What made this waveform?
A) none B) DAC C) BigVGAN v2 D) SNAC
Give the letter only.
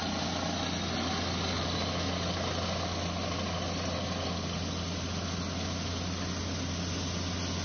A